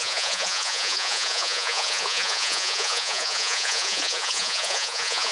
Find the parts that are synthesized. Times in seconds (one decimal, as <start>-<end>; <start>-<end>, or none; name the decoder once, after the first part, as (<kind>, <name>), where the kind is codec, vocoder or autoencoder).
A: 0.0-5.3 (vocoder, Vocos)